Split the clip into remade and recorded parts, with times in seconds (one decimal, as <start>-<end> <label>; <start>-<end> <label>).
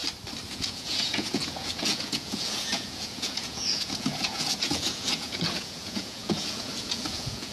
0.0-0.5 recorded; 0.5-7.5 remade